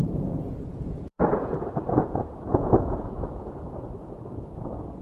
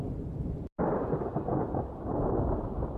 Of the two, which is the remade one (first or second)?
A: first